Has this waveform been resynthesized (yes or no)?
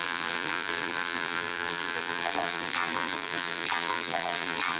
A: yes